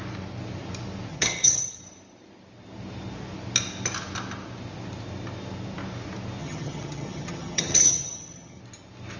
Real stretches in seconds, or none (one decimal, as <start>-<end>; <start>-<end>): 0.0-1.1; 1.8-6.4; 8.6-9.2